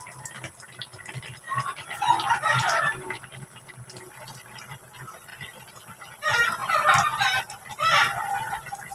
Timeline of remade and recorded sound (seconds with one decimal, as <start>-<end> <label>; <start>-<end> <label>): 0.0-8.9 recorded